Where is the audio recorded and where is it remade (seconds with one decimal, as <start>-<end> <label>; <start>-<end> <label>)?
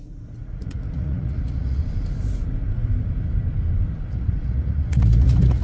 0.0-1.8 remade; 1.8-4.1 recorded; 4.1-5.6 remade